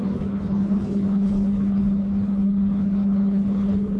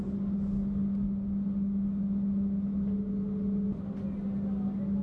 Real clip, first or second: second